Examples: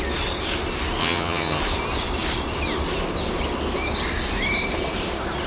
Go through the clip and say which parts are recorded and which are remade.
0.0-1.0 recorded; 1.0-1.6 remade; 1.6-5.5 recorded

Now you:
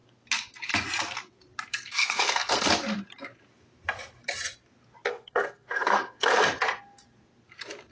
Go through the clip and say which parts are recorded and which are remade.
0.0-1.7 recorded; 1.7-2.7 remade; 2.7-5.1 recorded; 5.1-6.4 remade; 6.4-7.9 recorded

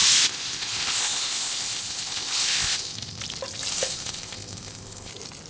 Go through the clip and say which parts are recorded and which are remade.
0.0-3.2 remade; 3.2-3.7 recorded; 3.7-5.1 remade; 5.1-5.5 recorded

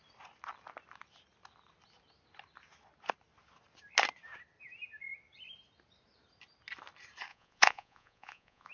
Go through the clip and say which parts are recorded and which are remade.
0.0-7.3 recorded; 7.3-8.7 remade